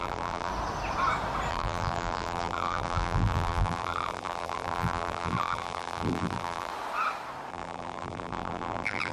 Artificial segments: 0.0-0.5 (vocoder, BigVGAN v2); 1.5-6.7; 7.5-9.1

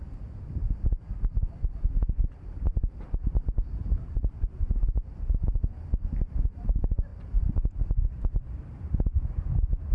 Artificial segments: 2.7-5.7 (vocoder, BigVGAN v2)